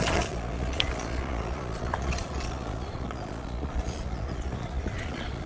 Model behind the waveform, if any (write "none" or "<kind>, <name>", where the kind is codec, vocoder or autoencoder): vocoder, Vocos